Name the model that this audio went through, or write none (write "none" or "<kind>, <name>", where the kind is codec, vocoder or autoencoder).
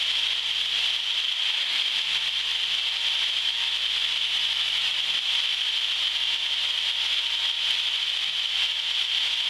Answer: none